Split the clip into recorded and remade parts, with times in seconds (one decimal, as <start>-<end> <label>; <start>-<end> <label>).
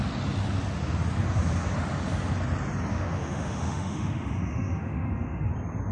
0.0-2.9 recorded; 2.9-5.5 remade; 5.5-5.9 recorded